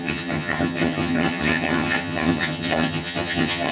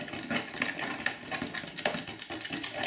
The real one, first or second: second